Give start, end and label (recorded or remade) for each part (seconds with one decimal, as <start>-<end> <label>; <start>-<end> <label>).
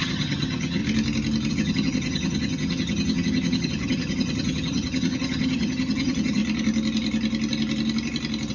0.0-0.8 remade; 0.8-1.5 recorded; 1.5-6.4 remade; 6.4-8.5 recorded